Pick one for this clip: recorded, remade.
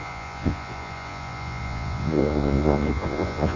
remade